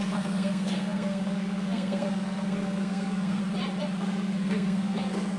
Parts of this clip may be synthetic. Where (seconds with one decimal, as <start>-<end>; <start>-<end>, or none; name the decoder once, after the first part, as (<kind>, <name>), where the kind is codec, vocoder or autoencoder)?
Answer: 0.0-3.4 (codec, SNAC); 4.0-5.4